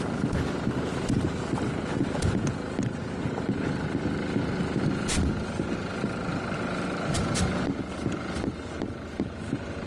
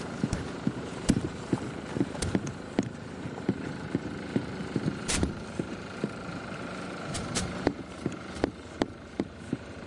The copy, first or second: second